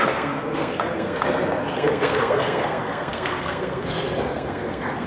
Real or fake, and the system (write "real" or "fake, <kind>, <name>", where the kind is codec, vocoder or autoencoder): fake, codec, SNAC